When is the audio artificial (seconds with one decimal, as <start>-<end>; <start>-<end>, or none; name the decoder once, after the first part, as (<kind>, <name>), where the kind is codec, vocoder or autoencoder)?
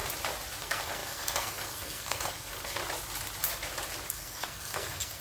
0.6-2.8 (codec, SNAC); 4.1-5.2